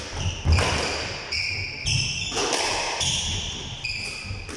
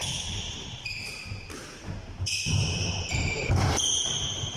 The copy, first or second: second